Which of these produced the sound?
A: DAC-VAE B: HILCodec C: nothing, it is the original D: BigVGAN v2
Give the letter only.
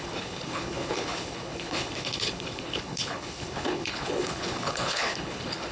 B